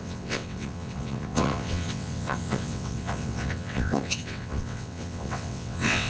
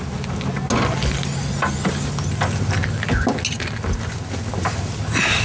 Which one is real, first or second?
second